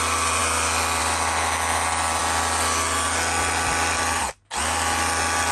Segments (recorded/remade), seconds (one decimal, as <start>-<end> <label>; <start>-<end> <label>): 0.0-5.5 recorded